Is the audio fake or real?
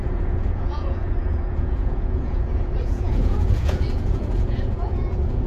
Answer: fake